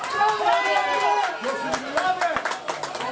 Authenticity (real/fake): real